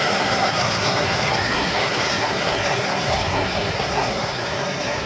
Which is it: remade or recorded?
remade